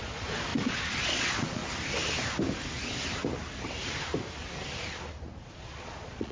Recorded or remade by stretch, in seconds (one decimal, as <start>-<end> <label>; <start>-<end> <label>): 0.0-1.6 remade; 1.6-5.4 recorded; 5.4-6.3 remade